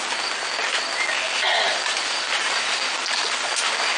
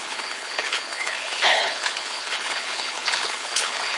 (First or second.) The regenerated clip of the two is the second